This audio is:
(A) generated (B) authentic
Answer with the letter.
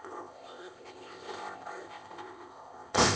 A